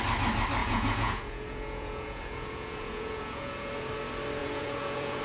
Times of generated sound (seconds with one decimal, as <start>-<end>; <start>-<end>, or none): 0.6-3.7; 4.4-5.2